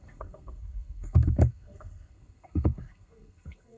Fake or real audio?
fake